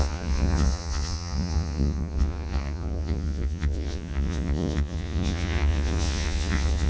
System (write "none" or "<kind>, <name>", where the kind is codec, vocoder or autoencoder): vocoder, Vocos